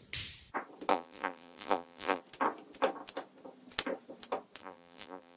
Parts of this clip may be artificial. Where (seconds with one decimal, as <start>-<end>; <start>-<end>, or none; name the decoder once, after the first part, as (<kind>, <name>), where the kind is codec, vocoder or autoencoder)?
0.9-2.2 (vocoder, BigVGAN v2); 4.6-5.4